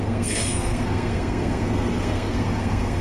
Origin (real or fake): fake